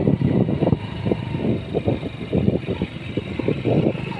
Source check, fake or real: real